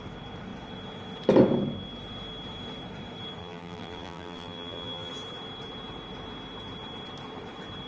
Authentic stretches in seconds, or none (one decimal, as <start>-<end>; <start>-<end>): 0.0-3.4; 5.1-7.9